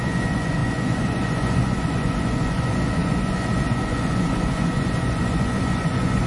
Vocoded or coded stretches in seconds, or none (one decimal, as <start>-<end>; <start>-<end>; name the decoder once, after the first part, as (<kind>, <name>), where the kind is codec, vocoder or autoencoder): 0.0-6.3 (vocoder, Vocos)